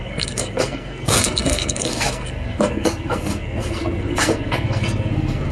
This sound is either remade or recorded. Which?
remade